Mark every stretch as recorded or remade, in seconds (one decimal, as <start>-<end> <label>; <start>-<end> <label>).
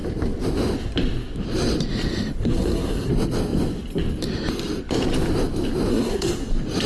0.0-2.4 recorded; 2.4-3.1 remade; 3.1-5.9 recorded; 5.9-6.5 remade; 6.5-6.9 recorded